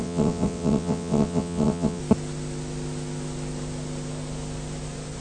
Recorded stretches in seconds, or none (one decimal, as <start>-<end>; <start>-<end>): 2.0-5.2